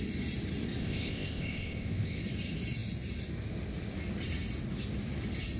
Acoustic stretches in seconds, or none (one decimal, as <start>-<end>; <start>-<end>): 0.0-0.8; 2.2-5.6